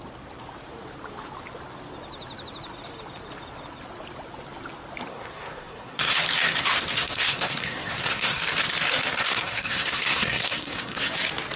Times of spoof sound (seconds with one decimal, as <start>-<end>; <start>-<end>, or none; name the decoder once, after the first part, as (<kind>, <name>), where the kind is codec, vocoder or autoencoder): 5.1-6.2 (codec, SNAC); 7.0-8.4; 9.2-11.1